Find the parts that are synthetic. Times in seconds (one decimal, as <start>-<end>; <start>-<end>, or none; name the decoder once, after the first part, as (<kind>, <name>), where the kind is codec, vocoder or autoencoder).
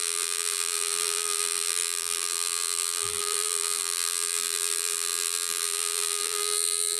0.0-7.0 (vocoder, BigVGAN v2)